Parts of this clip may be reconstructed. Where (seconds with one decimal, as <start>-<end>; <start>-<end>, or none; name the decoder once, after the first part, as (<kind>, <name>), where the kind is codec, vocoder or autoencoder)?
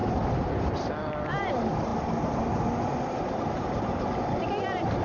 none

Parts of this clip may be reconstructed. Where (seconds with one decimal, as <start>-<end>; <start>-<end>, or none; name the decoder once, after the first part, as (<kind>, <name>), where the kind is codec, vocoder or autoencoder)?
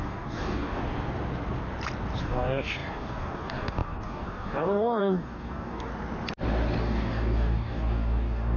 0.0-0.8 (codec, DAC); 2.2-5.9; 6.8-8.6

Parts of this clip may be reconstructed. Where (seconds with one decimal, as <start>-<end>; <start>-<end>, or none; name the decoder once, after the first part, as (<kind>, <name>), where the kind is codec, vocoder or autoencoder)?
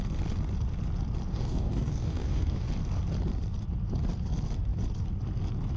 1.3-2.7 (codec, DAC)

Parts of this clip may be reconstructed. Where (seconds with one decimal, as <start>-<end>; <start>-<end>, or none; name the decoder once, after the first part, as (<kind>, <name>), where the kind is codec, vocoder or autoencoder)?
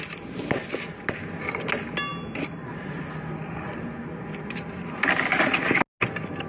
none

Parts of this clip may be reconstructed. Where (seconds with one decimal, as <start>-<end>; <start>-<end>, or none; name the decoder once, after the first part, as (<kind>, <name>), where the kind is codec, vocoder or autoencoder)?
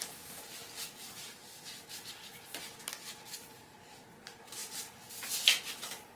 none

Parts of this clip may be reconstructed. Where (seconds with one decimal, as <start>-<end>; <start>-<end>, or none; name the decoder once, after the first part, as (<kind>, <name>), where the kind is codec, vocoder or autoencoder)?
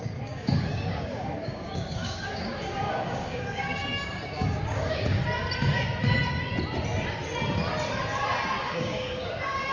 0.0-5.2 (codec, DAC); 8.6-9.7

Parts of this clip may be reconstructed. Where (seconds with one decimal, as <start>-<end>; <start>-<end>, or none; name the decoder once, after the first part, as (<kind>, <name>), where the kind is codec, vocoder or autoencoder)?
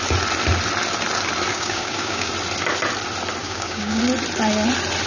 1.5-2.3 (codec, DAC); 3.4-4.0